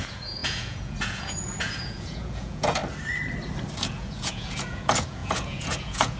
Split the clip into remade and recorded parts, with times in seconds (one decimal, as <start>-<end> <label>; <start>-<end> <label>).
0.0-2.8 remade; 2.8-3.8 recorded; 3.8-6.2 remade